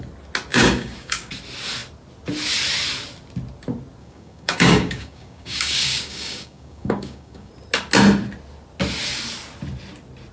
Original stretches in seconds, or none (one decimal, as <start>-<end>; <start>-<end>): 0.0-0.5; 1.3-4.0; 7.5-10.3